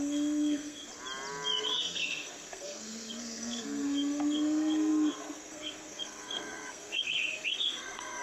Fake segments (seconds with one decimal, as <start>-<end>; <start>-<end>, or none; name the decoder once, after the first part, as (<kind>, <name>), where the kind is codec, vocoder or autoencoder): 0.0-0.9 (codec, SNAC); 1.6-8.2